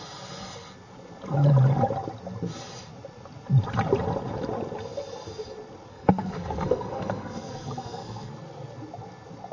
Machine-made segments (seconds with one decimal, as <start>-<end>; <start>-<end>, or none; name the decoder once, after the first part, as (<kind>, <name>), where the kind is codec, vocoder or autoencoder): 5.9-8.3 (codec, SNAC)